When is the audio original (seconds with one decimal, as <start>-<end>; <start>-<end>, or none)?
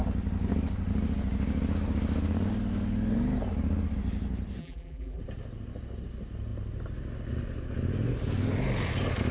0.0-4.6; 5.2-9.3